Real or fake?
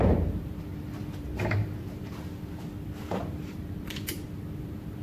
fake